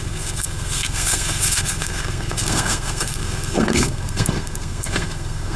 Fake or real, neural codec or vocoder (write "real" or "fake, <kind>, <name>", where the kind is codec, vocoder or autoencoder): fake, codec, SNAC